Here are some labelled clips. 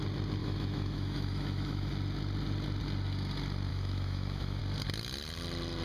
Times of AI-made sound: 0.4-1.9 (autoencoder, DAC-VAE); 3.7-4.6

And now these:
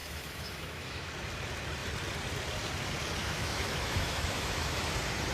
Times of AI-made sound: 0.0-1.1 (autoencoder, DAC-VAE); 3.2-4.8

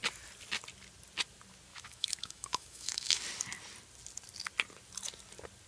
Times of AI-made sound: 1.7-3.2 (autoencoder, DAC-VAE)

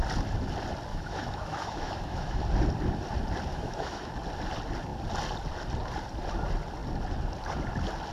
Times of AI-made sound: 0.9-2.4 (autoencoder, DAC-VAE); 3.5-4.1

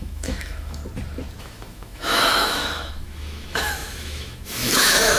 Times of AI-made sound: 0.0-0.8 (autoencoder, DAC-VAE); 1.4-5.2